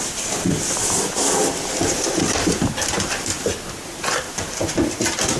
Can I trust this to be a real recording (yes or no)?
no